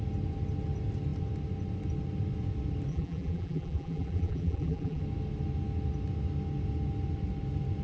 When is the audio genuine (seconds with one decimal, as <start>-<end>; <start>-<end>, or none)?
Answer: 0.0-2.9; 5.0-7.8